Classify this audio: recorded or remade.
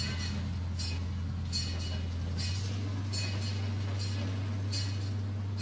recorded